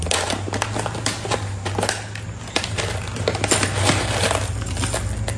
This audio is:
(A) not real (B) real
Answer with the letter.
B